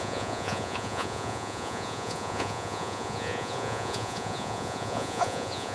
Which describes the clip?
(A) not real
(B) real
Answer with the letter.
A